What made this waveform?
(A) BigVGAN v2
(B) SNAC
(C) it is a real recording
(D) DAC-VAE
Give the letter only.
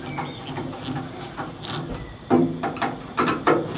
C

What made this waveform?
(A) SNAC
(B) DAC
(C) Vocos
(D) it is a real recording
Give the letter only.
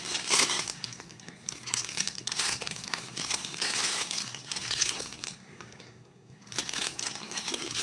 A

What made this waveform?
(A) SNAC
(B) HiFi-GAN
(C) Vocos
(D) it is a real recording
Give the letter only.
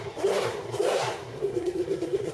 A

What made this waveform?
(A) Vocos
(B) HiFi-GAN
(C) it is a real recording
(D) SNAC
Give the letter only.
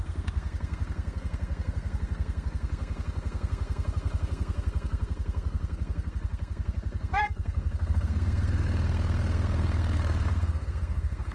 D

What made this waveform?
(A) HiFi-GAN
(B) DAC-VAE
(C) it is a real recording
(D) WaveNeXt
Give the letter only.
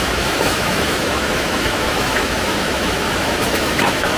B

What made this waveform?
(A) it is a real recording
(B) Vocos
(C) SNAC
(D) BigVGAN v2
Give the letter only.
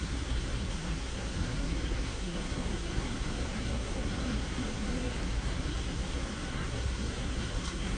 C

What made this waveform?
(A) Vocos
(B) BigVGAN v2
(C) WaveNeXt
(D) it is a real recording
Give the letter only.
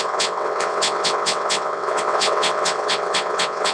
C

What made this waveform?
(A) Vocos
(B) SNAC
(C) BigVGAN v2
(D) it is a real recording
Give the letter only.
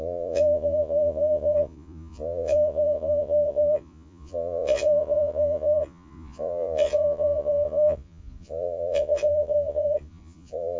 A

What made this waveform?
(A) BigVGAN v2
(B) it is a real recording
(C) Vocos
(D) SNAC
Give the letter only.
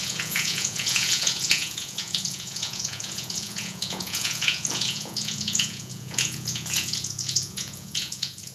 C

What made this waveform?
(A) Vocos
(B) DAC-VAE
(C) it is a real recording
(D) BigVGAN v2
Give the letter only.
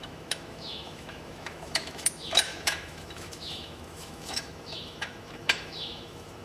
B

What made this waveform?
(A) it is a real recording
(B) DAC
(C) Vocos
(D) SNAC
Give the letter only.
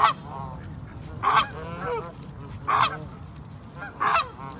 A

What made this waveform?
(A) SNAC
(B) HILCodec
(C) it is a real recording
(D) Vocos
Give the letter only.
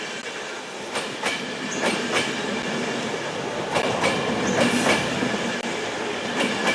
C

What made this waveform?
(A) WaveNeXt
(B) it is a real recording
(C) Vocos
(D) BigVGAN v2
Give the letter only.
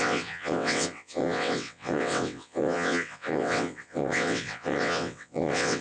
A